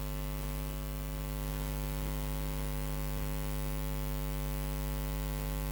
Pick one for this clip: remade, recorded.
recorded